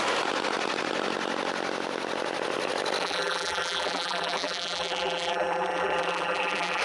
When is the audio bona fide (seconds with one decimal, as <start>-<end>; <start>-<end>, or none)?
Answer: 0.0-3.0